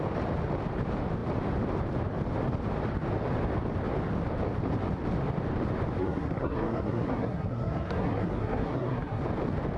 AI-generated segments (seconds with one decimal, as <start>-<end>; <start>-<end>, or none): 6.0-9.2